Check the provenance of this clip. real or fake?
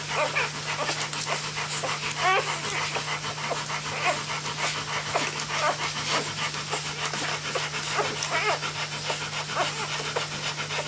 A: real